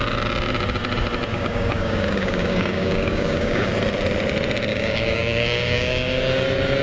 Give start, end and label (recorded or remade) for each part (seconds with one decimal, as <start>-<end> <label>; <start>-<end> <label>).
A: 0.0-1.3 recorded; 1.3-3.7 remade; 3.7-4.7 recorded; 4.7-6.2 remade; 6.2-6.8 recorded